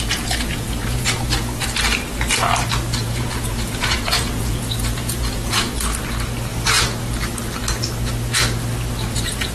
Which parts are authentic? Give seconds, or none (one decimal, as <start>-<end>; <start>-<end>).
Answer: 1.3-3.0; 5.7-9.0